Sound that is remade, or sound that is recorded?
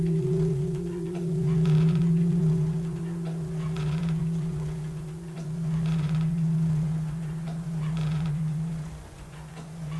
remade